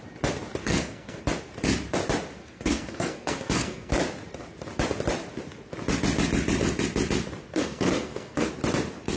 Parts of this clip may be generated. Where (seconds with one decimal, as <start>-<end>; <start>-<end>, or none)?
0.6-1.2; 2.4-3.9; 7.5-8.5